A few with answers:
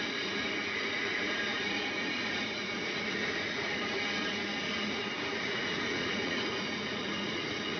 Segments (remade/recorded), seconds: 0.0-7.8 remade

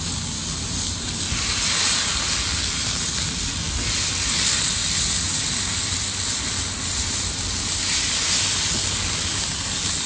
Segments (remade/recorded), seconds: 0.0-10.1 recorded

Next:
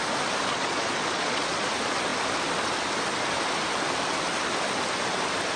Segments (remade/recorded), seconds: 0.0-0.5 recorded; 0.5-1.7 remade; 1.7-5.6 recorded

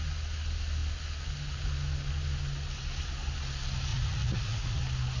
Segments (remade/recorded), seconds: 0.0-3.9 recorded; 3.9-4.8 remade; 4.8-5.2 recorded